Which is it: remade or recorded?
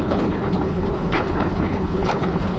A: remade